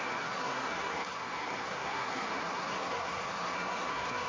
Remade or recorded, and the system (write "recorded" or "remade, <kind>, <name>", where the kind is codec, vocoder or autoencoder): remade, codec, SNAC